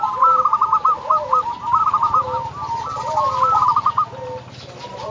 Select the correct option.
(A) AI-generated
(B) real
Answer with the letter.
B